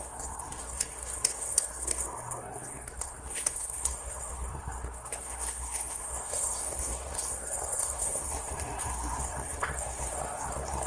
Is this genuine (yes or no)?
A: no